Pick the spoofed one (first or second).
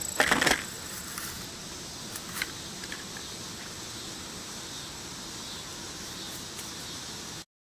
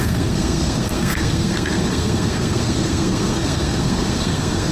second